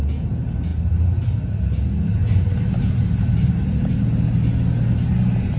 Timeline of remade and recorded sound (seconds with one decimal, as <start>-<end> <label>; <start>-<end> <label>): 0.0-0.7 recorded; 0.7-1.6 remade; 1.6-2.2 recorded; 2.2-3.9 remade; 3.9-5.6 recorded